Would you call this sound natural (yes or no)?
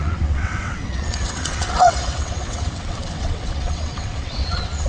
no